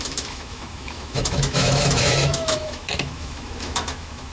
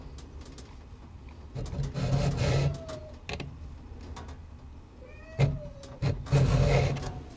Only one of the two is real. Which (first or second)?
second